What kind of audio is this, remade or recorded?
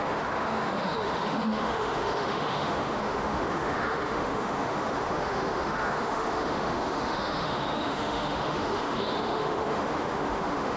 remade